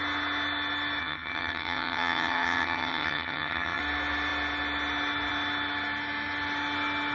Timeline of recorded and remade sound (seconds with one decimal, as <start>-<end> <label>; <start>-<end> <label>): 0.0-1.0 recorded; 1.0-3.8 remade; 3.8-7.1 recorded